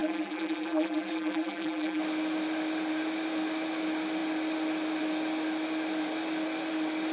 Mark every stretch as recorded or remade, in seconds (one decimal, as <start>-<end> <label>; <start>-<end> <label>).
0.0-2.0 remade; 2.0-7.1 recorded